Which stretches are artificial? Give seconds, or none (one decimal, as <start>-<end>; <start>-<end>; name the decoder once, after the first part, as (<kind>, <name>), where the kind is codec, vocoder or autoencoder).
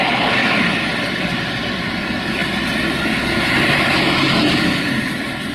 none